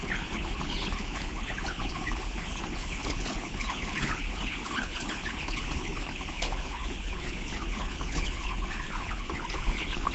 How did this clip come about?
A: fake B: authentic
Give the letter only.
A